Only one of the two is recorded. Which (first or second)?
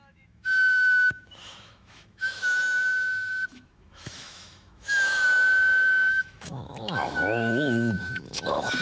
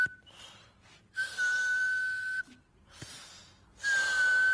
second